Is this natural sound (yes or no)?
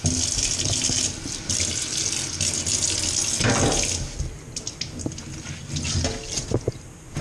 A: yes